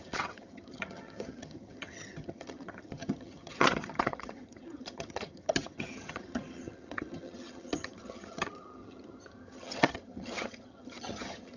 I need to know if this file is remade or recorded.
remade